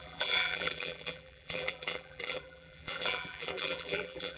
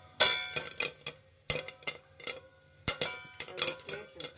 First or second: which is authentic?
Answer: second